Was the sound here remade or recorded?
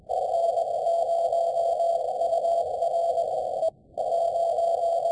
recorded